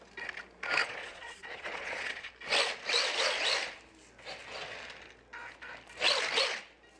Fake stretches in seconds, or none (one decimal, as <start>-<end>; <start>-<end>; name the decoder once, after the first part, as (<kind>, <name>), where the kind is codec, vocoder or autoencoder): 0.8-2.3 (vocoder, Vocos)